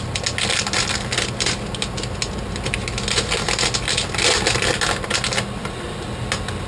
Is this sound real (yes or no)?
yes